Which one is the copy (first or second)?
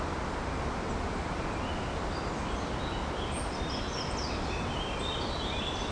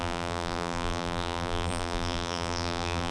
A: second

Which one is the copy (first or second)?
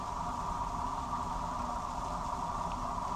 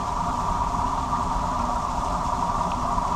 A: second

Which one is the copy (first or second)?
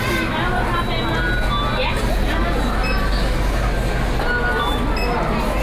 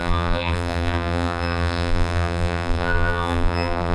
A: second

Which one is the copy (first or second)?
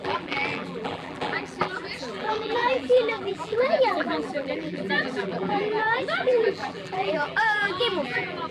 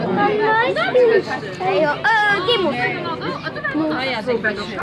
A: first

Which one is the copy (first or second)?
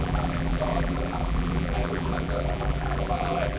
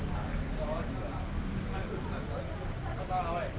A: first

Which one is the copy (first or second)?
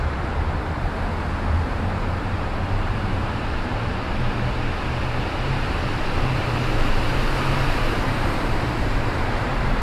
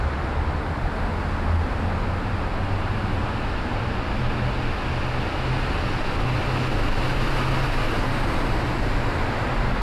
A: first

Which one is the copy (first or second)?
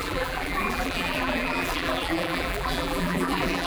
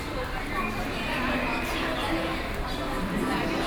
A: first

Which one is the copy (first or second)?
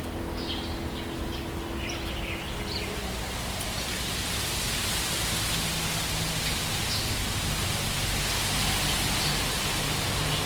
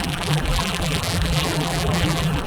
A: second